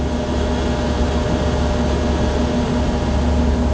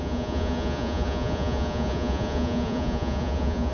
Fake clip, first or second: second